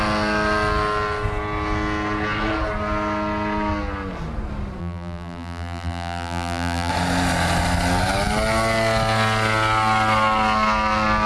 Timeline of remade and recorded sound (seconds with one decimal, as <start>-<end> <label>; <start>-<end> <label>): 0.0-4.8 recorded; 4.8-6.9 remade; 6.9-11.3 recorded